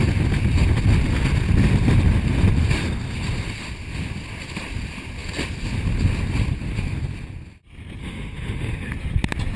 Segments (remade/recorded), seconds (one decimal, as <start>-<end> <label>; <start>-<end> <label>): 0.0-8.0 recorded; 8.0-8.9 remade; 8.9-9.6 recorded